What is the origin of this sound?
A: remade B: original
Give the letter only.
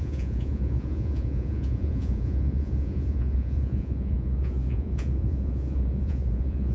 A